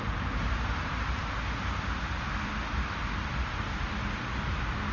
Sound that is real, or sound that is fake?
real